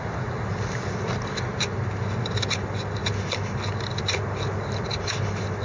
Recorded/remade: recorded